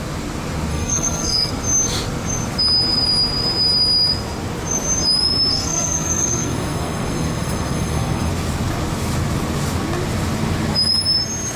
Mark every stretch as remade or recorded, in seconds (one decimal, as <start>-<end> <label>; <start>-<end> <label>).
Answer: 0.0-0.7 recorded; 0.7-1.5 remade; 1.5-5.5 recorded; 5.5-8.3 remade; 8.3-11.6 recorded